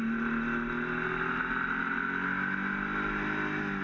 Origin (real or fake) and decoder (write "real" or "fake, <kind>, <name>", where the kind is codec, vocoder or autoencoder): real